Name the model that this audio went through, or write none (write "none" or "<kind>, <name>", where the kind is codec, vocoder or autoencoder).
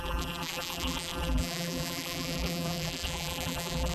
vocoder, BigVGAN v2